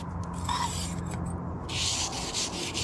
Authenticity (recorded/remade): recorded